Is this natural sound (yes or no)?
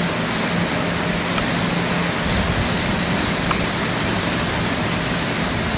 yes